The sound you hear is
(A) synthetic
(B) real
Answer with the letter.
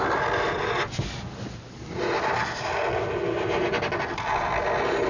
B